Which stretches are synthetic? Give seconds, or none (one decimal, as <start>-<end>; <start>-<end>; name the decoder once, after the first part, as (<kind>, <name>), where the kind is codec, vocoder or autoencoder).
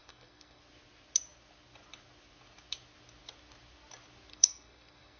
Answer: 0.0-0.6 (codec, SNAC); 4.3-5.2